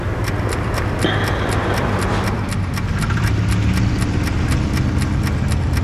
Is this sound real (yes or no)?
yes